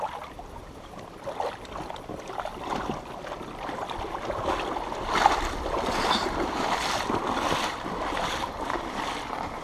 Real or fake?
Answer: real